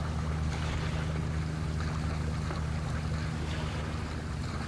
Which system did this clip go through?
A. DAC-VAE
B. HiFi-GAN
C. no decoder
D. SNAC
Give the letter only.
C